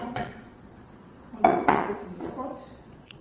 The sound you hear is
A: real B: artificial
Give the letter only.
B